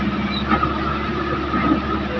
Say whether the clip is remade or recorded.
recorded